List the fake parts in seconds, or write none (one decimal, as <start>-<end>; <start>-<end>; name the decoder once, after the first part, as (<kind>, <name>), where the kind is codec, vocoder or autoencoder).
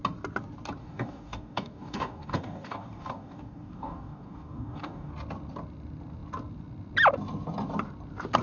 0.8-5.1 (codec, DAC)